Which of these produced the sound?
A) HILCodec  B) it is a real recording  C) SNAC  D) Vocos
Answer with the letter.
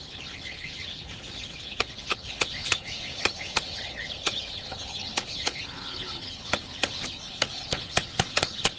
A